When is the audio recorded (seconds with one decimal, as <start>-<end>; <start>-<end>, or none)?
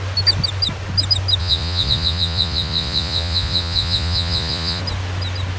0.0-1.4; 4.8-5.6